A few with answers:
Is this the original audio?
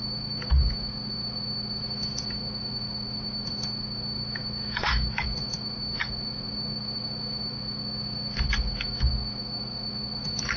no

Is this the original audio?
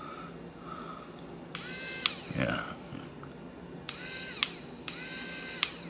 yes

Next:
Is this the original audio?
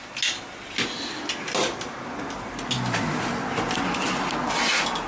yes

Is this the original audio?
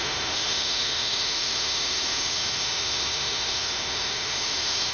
no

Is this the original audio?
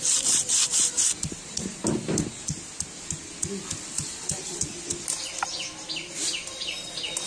yes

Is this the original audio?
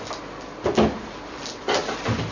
yes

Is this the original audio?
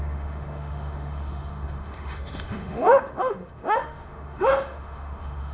no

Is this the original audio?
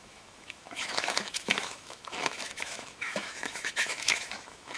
no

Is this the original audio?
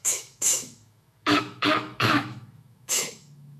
no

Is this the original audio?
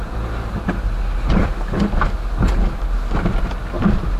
yes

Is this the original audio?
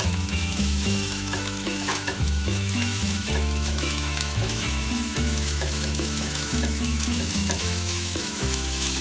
no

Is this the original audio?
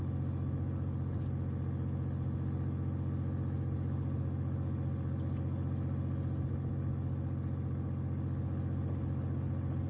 yes